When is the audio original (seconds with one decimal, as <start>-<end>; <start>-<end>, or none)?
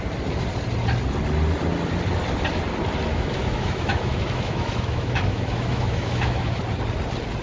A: 0.0-3.1; 6.6-7.4